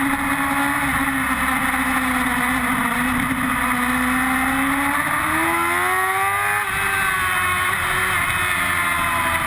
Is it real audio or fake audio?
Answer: real